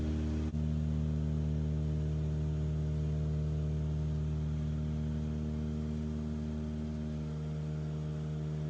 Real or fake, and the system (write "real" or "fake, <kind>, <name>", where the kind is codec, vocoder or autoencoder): real